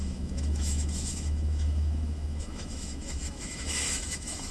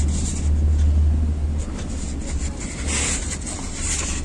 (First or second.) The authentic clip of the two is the second